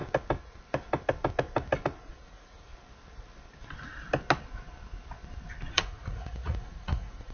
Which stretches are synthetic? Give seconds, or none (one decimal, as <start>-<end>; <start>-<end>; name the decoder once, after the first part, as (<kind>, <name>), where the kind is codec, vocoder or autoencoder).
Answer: 2.1-2.7 (vocoder, Vocos); 5.7-7.3